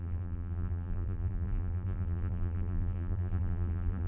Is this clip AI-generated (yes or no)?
yes